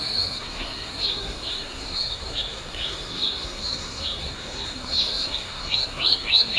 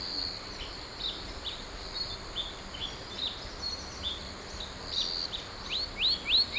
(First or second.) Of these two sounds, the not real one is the first